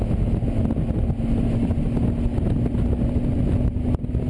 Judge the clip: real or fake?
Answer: real